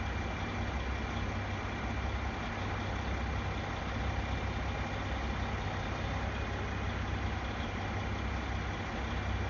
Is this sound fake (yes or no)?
no